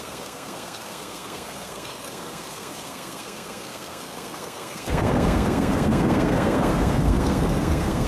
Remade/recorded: remade